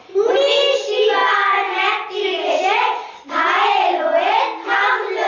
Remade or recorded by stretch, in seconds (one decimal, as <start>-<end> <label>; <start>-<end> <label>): 0.0-5.3 recorded